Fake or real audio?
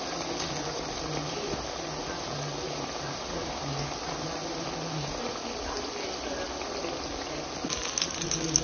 real